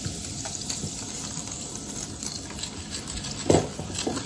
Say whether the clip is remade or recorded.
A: recorded